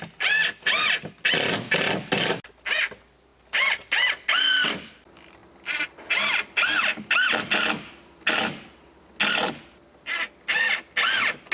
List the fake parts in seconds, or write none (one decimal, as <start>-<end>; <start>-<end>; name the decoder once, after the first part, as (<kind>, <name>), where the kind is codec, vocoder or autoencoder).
none